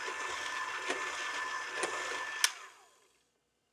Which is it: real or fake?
real